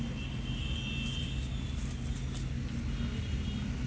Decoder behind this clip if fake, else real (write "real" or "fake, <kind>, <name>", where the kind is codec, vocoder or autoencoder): real